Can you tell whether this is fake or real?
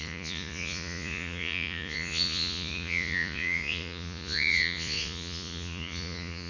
fake